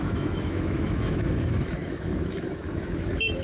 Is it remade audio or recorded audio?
remade